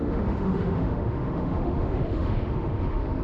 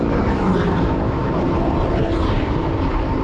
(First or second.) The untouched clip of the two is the second